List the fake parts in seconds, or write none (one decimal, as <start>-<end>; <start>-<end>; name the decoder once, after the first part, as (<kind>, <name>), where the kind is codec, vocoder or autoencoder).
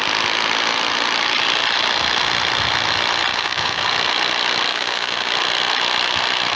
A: 3.3-3.8 (codec, DAC); 4.7-5.3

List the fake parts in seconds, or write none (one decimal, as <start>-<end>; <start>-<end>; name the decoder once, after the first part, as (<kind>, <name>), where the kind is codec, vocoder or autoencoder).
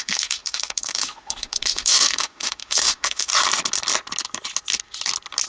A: 0.0-3.3 (autoencoder, DAC-VAE)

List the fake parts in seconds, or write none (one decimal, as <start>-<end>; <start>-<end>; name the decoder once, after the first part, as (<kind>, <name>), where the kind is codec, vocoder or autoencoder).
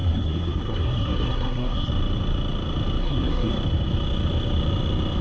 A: 0.0-1.9 (codec, SNAC); 3.0-3.5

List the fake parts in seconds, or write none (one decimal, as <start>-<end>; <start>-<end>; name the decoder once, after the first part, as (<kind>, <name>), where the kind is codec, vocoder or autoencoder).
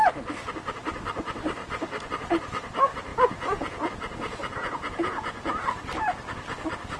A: 3.1-3.9 (vocoder, Vocos); 4.5-5.4